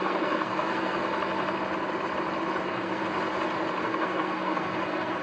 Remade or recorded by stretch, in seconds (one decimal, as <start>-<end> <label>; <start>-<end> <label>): 0.0-1.0 remade; 1.0-2.6 recorded; 2.6-3.0 remade; 3.0-3.8 recorded; 3.8-5.2 remade